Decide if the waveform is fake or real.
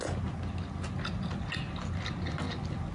real